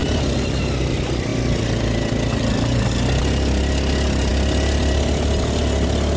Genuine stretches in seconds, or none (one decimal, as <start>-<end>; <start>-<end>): 0.6-6.2